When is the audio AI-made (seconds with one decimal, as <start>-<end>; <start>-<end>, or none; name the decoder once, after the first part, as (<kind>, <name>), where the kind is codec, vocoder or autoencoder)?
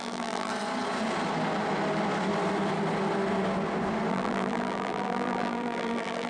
0.0-0.5 (vocoder, BigVGAN v2); 4.1-6.3